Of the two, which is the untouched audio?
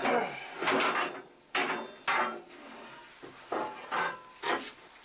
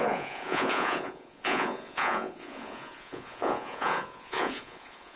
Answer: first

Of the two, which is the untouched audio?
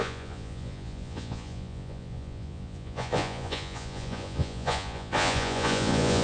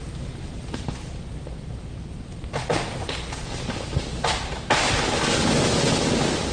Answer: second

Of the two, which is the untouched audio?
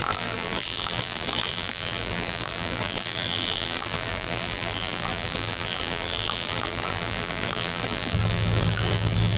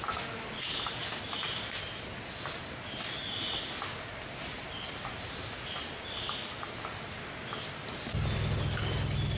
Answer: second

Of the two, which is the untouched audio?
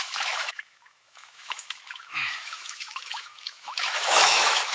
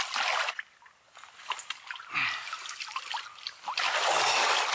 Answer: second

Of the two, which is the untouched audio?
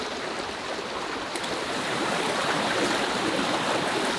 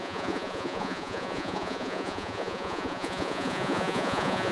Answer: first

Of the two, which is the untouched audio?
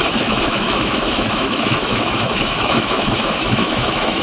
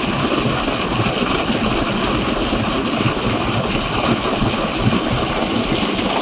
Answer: second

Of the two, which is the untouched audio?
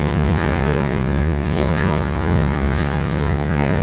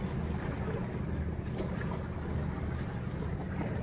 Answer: second